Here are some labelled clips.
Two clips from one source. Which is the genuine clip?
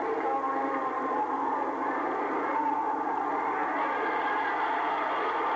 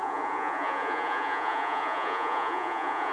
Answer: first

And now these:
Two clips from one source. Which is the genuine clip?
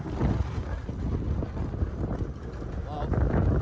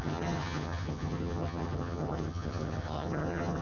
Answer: first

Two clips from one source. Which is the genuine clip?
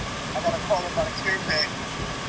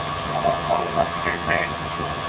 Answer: first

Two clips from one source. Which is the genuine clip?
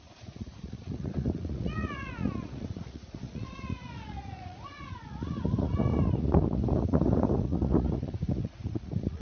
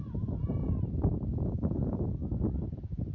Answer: second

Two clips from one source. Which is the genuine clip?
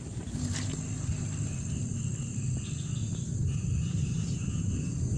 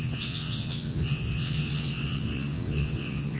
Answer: first